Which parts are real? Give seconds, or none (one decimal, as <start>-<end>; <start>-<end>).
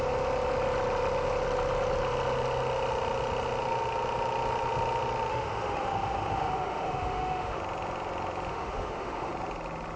0.0-5.3; 7.6-8.5; 9.3-10.0